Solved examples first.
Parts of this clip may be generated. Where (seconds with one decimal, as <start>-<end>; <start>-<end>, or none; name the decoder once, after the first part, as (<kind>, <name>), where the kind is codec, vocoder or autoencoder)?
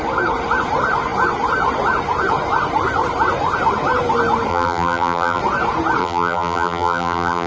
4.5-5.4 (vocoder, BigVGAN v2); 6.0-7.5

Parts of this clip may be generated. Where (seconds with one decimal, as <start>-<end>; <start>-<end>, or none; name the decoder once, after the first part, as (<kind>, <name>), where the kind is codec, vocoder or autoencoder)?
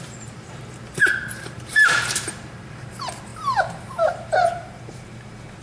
0.0-5.6 (vocoder, BigVGAN v2)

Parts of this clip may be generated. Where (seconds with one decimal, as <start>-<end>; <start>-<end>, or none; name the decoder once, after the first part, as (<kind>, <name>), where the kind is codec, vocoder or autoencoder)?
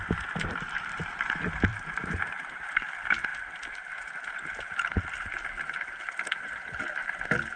1.7-2.7 (vocoder, BigVGAN v2)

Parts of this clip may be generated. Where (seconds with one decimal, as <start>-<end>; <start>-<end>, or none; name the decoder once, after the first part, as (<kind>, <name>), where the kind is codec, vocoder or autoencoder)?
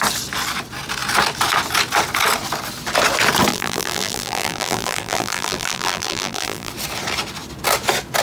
3.5-6.7 (vocoder, BigVGAN v2)